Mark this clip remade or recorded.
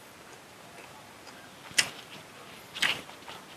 remade